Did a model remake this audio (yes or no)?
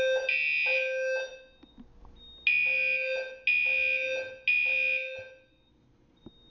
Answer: no